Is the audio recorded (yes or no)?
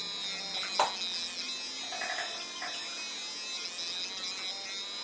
yes